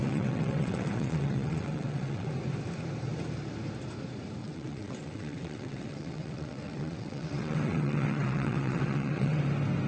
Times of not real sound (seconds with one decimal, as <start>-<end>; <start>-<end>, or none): 0.0-2.3; 4.4-9.4